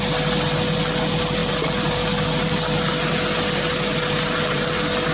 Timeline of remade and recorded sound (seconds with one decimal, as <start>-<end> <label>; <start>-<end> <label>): 0.0-5.1 recorded